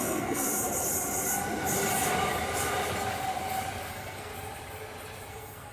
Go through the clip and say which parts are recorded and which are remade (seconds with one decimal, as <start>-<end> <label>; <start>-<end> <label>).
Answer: 0.0-0.5 remade; 0.5-3.9 recorded; 3.9-4.3 remade; 4.3-5.3 recorded; 5.3-5.7 remade